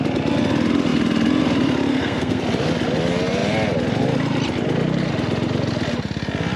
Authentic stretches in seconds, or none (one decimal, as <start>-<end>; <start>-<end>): 0.0-1.9; 2.4-6.6